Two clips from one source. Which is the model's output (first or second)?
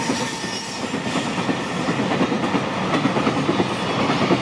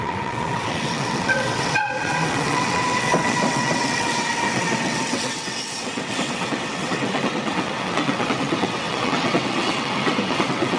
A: second